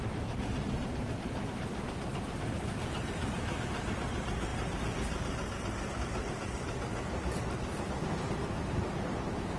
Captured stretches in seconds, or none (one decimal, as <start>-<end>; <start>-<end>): 4.5-5.9; 6.9-8.3